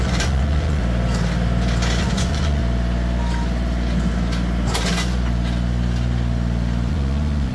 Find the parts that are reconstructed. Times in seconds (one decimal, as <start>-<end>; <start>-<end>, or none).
0.0-0.8; 2.0-2.6; 6.9-7.5